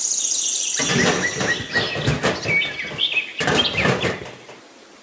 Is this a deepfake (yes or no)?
no